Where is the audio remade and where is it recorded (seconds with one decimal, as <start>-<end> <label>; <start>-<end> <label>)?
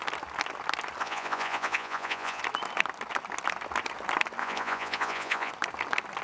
0.0-1.0 recorded; 1.0-2.4 remade; 2.4-4.4 recorded; 4.4-5.5 remade; 5.5-6.2 recorded